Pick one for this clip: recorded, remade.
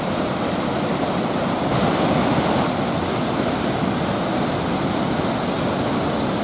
recorded